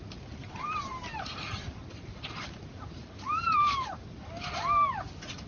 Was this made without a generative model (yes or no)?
yes